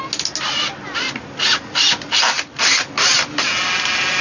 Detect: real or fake real